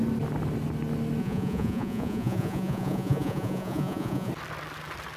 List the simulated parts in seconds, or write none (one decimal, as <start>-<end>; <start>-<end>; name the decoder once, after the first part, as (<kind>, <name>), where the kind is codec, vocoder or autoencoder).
1.2-4.3 (vocoder, Vocos)